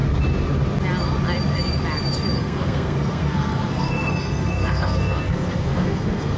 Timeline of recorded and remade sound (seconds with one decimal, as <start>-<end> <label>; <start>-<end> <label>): 0.0-2.3 recorded; 2.3-6.4 remade